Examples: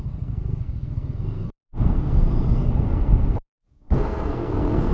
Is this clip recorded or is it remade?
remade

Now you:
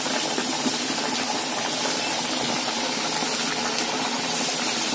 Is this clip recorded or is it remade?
recorded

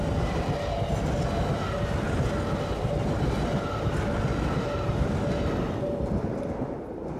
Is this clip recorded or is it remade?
recorded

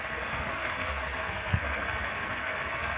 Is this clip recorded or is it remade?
remade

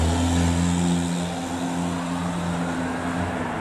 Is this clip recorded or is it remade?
recorded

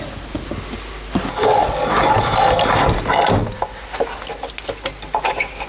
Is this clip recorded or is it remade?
recorded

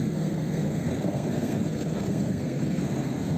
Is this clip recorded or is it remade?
remade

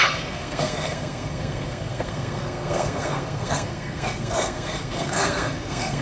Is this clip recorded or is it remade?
remade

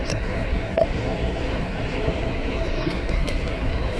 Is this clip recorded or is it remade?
remade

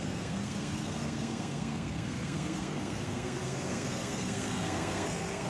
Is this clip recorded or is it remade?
remade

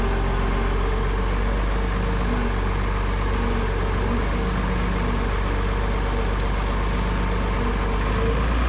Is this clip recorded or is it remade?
recorded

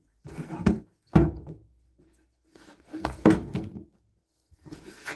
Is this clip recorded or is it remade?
remade